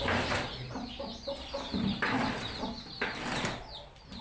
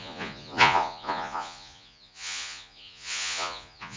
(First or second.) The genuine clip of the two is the first